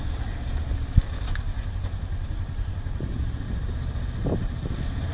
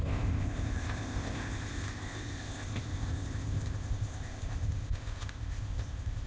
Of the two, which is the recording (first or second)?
first